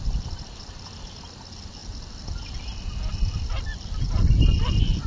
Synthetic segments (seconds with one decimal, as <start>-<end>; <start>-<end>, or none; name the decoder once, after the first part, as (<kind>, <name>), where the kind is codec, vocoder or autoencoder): none